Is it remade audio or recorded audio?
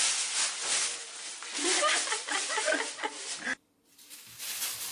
recorded